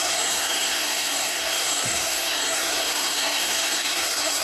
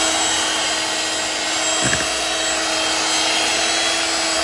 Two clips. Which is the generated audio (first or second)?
first